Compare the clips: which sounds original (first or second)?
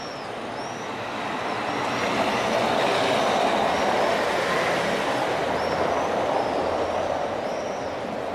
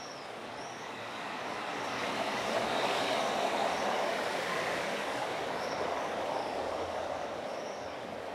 first